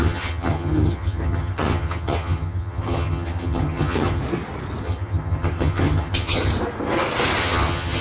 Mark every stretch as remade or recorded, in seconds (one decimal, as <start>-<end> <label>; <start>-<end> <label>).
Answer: 0.0-4.2 remade; 4.2-4.8 recorded; 4.8-6.5 remade; 6.5-7.4 recorded; 7.4-8.0 remade